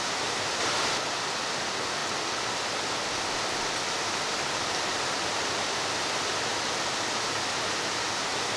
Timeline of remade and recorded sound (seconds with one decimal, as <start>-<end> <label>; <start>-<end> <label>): 0.0-8.6 recorded